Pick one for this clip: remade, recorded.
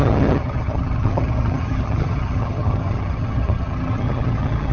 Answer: remade